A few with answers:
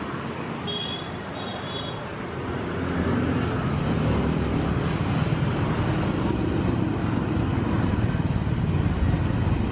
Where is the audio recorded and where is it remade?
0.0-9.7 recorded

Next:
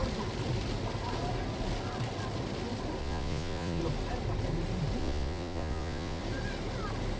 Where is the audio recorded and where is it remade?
0.0-3.0 recorded; 3.0-3.8 remade; 3.8-5.0 recorded; 5.0-6.2 remade; 6.2-7.2 recorded

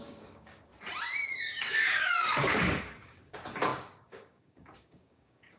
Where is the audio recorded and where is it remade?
0.0-0.7 remade; 0.7-1.3 recorded; 1.3-5.6 remade

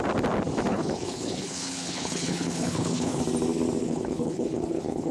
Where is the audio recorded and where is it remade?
0.0-0.7 recorded; 0.7-3.2 remade; 3.2-3.8 recorded; 3.8-5.1 remade

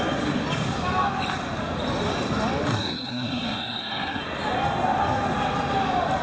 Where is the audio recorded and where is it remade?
0.0-2.7 recorded; 2.7-4.2 remade; 4.2-6.2 recorded

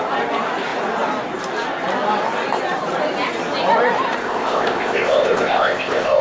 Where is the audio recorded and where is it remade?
0.0-4.2 recorded; 4.2-6.2 remade

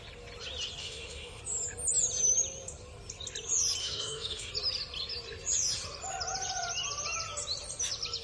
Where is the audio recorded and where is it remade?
0.0-0.8 recorded; 0.8-1.4 remade; 1.4-3.8 recorded; 3.8-4.5 remade; 4.5-8.2 recorded